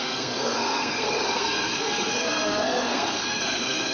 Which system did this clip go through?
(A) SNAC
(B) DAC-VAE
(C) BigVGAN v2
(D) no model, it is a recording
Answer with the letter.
A